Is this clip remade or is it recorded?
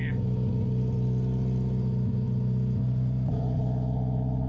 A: recorded